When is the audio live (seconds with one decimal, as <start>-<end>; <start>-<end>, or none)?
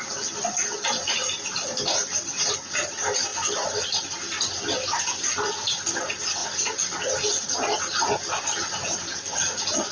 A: 0.0-9.9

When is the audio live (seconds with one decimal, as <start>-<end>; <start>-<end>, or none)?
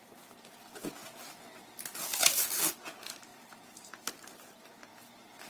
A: 0.0-3.3; 4.1-5.5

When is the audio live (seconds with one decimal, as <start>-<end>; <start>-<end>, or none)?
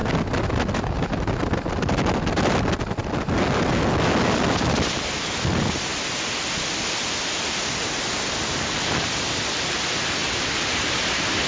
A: 0.0-11.5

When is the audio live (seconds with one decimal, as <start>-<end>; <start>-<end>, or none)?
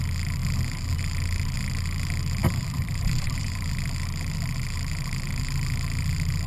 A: 0.0-2.4; 3.7-6.5